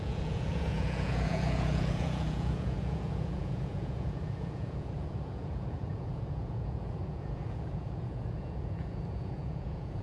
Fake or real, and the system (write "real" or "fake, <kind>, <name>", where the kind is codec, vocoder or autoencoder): fake, vocoder, Vocos